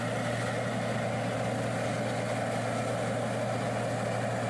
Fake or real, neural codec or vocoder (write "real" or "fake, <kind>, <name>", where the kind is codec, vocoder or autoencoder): real